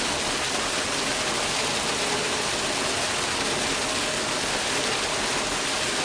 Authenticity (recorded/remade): recorded